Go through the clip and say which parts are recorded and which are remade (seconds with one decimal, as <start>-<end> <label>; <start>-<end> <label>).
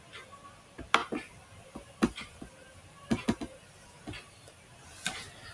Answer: 0.0-5.5 recorded